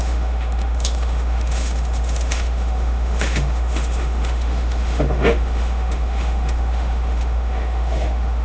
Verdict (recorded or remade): remade